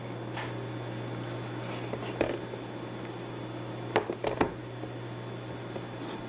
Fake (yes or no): no